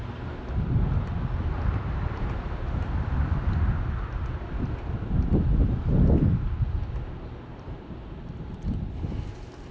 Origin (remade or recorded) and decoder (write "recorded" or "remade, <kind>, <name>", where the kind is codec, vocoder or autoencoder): recorded